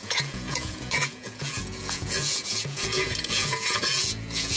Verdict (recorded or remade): remade